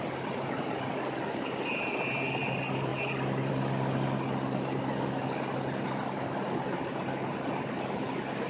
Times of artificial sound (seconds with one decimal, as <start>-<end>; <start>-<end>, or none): none